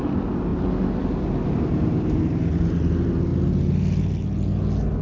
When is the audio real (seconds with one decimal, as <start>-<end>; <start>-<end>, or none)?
0.0-5.0